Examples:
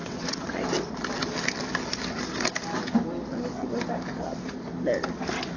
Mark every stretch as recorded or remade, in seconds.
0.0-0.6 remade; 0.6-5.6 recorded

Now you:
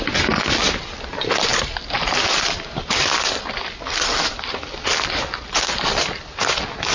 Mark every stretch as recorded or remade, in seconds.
0.0-6.9 recorded

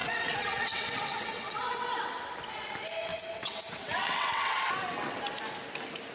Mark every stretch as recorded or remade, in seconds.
0.0-2.1 remade; 2.1-3.1 recorded; 3.1-5.2 remade; 5.2-6.1 recorded

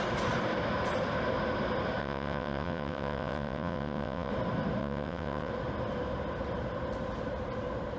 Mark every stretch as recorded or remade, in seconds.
0.0-2.0 recorded; 2.0-4.3 remade; 4.3-4.8 recorded; 4.8-5.5 remade; 5.5-8.0 recorded

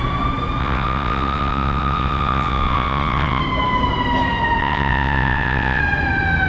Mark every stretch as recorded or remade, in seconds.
0.0-0.6 recorded; 0.6-3.4 remade; 3.4-4.6 recorded; 4.6-5.8 remade; 5.8-6.5 recorded

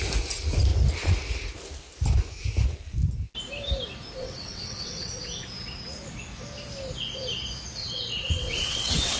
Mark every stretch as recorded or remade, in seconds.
0.0-4.2 recorded; 4.2-5.1 remade; 5.1-7.8 recorded; 7.8-9.2 remade

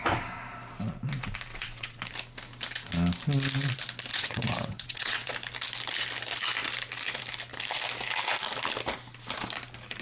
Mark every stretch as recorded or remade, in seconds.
0.0-1.5 recorded; 1.5-2.0 remade; 2.0-4.1 recorded; 4.1-5.3 remade; 5.3-10.0 recorded